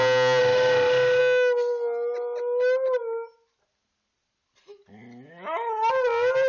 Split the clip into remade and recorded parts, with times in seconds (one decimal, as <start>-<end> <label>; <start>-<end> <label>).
0.0-0.4 recorded; 0.4-1.2 remade; 1.2-6.5 recorded